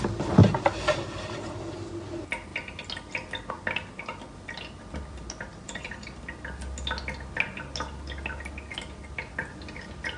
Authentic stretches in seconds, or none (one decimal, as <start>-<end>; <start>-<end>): 0.0-0.4; 1.7-5.5; 6.2-10.2